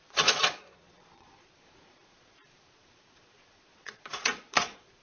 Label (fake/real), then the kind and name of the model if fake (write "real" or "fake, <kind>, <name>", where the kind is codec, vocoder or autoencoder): fake, vocoder, Vocos